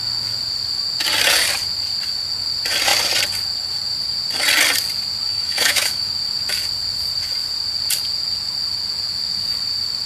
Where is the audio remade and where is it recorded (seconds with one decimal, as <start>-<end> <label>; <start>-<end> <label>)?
0.0-5.3 recorded; 5.3-6.1 remade; 6.1-10.1 recorded